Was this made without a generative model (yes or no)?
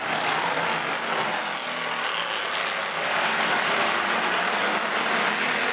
yes